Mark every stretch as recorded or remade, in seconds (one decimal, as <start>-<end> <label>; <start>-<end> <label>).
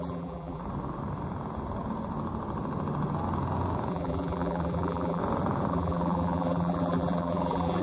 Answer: 0.0-0.6 remade; 0.6-3.9 recorded; 3.9-5.2 remade; 5.2-5.7 recorded; 5.7-7.8 remade